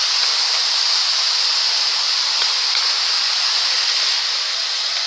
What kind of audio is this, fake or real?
real